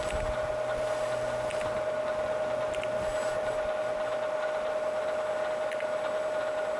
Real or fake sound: real